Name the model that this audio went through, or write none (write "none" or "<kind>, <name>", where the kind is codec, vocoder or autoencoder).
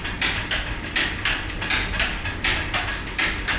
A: none